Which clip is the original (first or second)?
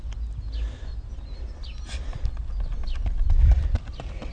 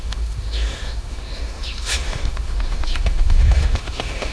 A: first